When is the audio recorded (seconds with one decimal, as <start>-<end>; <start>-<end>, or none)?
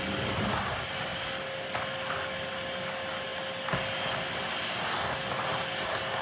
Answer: 0.0-6.2